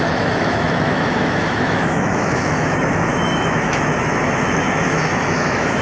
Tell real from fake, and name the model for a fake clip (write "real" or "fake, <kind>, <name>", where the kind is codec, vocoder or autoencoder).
fake, autoencoder, DAC-VAE